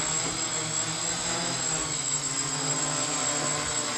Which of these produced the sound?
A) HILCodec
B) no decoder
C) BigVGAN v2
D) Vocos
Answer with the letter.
B